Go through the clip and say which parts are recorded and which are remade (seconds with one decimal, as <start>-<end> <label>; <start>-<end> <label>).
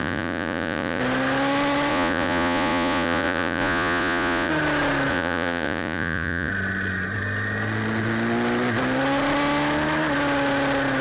0.0-1.0 remade; 1.0-1.9 recorded; 1.9-4.5 remade; 4.5-5.1 recorded; 5.1-6.5 remade; 6.5-11.0 recorded